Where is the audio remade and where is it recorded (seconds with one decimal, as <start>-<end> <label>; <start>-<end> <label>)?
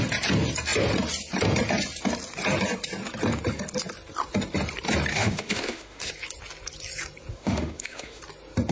0.0-5.1 recorded; 5.1-6.1 remade; 6.1-7.3 recorded; 7.3-8.2 remade; 8.2-8.7 recorded